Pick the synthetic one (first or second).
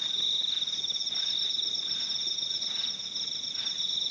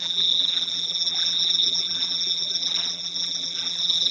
second